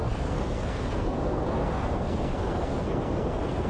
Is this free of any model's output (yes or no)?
no